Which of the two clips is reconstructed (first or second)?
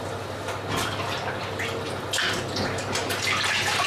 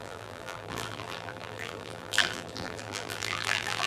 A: second